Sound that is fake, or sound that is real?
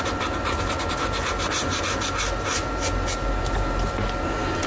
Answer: real